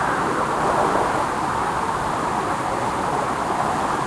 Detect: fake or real real